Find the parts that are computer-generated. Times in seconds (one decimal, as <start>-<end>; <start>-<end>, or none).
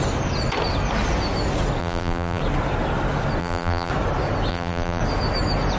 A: 1.8-2.4; 3.4-3.9; 4.5-5.0